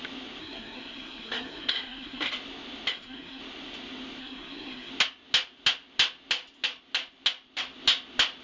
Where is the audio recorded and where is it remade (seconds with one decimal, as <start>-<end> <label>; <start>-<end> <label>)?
0.0-0.4 recorded; 0.4-2.3 remade; 2.3-2.9 recorded; 2.9-3.4 remade; 3.4-4.2 recorded; 4.2-4.9 remade; 4.9-8.4 recorded